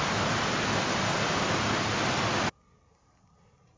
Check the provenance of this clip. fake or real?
real